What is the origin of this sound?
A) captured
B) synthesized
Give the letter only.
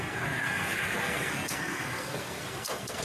B